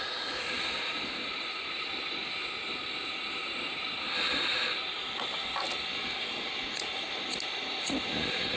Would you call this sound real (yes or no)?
yes